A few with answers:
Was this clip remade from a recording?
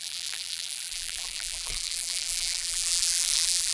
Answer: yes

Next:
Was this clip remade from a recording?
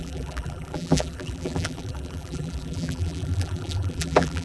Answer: yes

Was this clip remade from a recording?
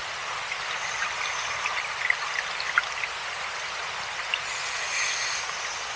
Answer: no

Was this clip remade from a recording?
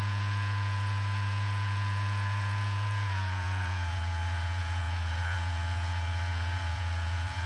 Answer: yes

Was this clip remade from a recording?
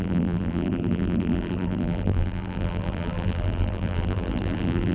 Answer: yes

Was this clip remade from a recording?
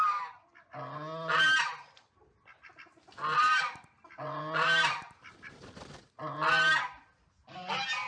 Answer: no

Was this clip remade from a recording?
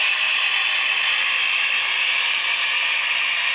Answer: no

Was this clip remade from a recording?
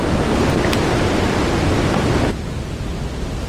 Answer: no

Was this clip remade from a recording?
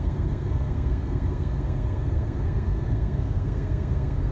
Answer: yes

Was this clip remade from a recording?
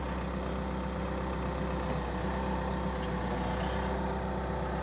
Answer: no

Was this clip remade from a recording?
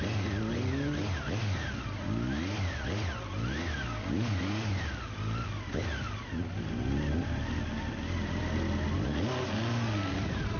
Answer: no